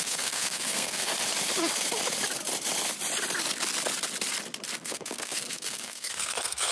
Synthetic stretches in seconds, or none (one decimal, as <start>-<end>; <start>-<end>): 0.0-1.1; 4.8-6.7